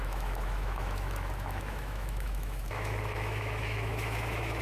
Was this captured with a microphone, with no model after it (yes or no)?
no